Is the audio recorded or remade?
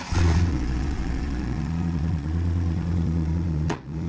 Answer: remade